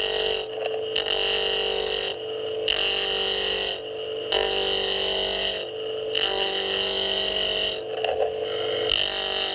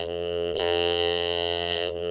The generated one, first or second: second